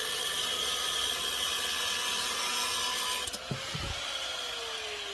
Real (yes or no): yes